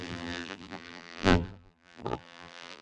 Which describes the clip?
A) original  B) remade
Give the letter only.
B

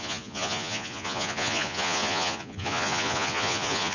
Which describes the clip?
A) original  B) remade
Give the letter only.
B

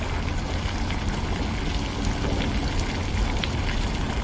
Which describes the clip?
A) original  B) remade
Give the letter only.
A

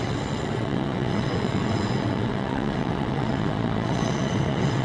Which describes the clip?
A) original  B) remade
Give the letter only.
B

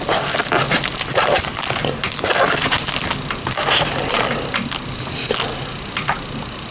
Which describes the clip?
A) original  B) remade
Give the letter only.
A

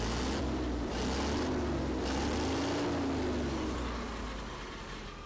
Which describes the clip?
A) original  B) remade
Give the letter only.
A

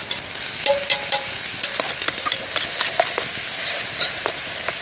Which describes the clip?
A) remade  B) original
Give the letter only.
B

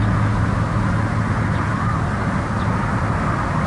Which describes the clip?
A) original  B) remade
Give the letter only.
A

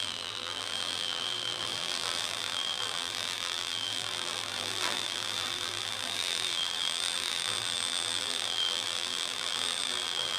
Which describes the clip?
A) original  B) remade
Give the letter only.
B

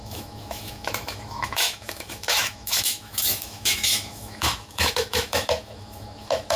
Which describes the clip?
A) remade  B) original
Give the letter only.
A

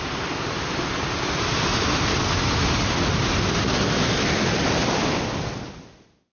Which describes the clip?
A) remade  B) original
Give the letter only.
B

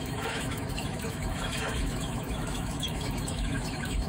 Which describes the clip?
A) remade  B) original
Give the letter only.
A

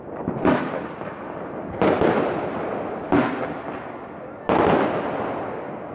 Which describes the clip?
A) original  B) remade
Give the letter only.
A